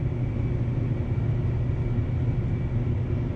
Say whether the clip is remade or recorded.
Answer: recorded